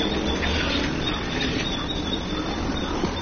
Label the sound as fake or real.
real